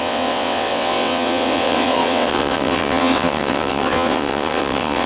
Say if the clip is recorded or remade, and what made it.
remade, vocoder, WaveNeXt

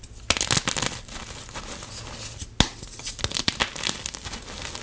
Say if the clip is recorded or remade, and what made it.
recorded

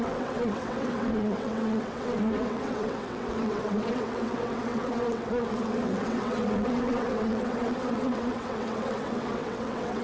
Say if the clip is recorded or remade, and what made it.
remade, vocoder, WaveNeXt